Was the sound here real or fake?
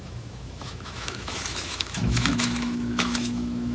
fake